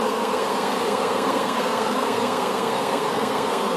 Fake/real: fake